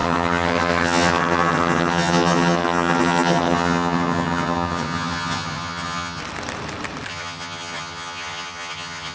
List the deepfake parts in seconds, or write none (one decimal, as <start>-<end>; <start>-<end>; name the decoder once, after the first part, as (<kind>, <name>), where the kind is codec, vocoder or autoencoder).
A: 0.0-6.2 (vocoder, HiFi-GAN); 7.1-9.1